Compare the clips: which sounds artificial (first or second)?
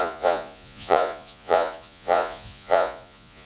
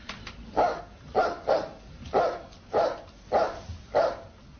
first